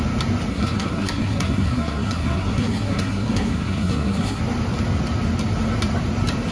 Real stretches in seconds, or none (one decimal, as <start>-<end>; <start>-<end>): 0.0-0.5; 4.4-6.5